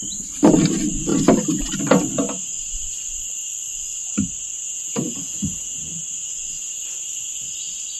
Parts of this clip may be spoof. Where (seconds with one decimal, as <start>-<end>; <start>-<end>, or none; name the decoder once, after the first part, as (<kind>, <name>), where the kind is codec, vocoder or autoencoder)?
4.7-6.0 (vocoder, Vocos)